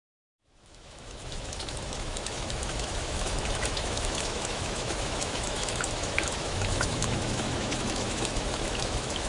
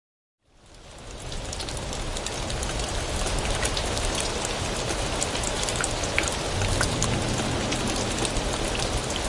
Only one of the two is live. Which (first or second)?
second